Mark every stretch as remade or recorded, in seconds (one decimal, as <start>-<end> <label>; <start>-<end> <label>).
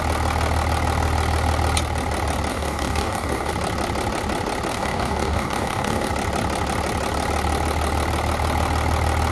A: 0.0-2.5 recorded; 2.5-3.5 remade; 3.5-4.7 recorded; 4.7-6.1 remade; 6.1-9.3 recorded